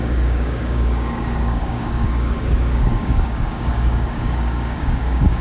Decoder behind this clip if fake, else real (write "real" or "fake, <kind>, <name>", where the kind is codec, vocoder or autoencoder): fake, codec, DAC